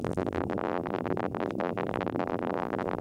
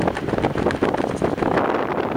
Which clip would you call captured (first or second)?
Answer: second